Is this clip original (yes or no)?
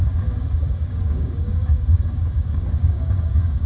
no